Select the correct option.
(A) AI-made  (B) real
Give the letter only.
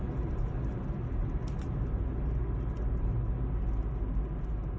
B